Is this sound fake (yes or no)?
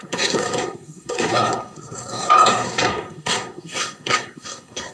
yes